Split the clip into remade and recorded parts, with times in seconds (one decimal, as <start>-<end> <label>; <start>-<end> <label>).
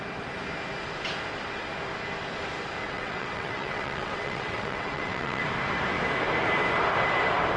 0.0-2.8 recorded; 2.8-5.4 remade; 5.4-7.6 recorded